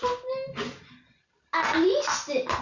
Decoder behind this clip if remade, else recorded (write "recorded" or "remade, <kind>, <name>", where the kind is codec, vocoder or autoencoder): recorded